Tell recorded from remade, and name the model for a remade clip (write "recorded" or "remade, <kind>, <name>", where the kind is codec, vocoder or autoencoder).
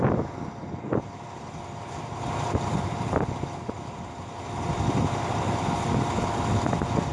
recorded